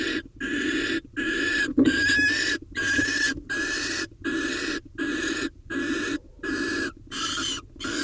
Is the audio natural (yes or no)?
yes